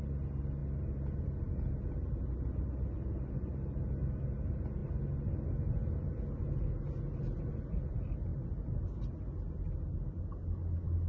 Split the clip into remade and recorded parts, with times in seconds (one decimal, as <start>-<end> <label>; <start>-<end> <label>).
0.0-11.1 recorded